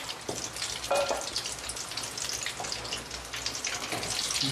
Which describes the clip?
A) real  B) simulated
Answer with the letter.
A